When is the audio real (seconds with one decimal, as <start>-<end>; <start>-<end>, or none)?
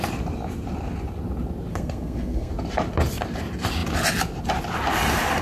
0.0-1.7; 2.5-5.4